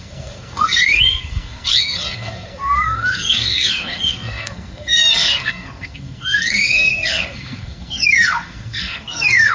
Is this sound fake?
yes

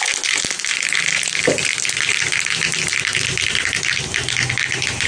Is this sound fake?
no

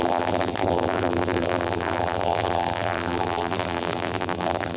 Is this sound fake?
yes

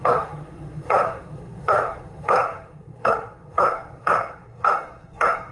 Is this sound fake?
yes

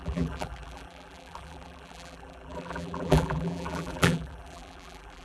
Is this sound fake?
yes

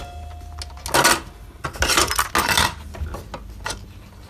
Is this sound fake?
no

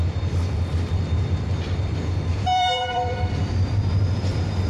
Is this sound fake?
yes